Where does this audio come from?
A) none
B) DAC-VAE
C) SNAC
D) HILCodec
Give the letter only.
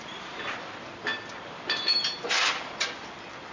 A